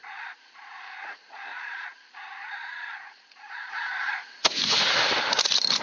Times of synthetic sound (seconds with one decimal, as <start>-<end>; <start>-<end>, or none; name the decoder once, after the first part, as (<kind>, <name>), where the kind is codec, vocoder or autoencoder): 0.0-4.4 (vocoder, Vocos)